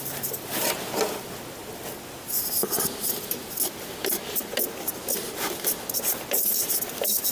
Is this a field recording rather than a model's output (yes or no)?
yes